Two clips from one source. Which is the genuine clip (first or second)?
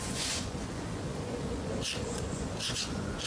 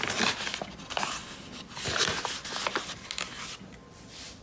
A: second